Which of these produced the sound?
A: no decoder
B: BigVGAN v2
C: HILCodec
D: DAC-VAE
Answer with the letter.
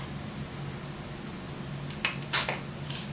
A